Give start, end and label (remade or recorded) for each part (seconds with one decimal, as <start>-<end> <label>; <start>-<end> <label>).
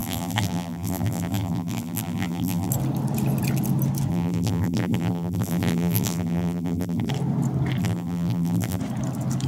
0.0-2.7 remade; 2.7-4.1 recorded; 4.1-7.1 remade; 7.1-7.8 recorded; 7.8-8.8 remade; 8.8-9.5 recorded